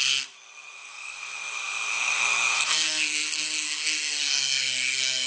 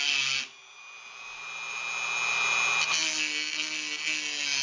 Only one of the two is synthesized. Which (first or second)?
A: first